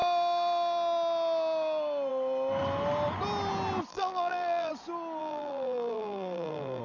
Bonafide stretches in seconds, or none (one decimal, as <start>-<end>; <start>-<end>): 0.0-3.9; 4.7-5.2